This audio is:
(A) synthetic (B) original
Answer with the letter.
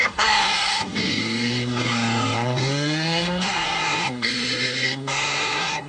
A